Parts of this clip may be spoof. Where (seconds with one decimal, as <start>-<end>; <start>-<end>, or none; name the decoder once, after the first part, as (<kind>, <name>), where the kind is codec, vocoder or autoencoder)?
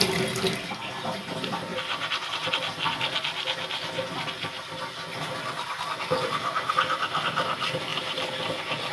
none